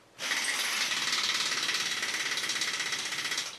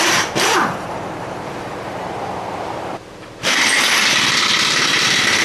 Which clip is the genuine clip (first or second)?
first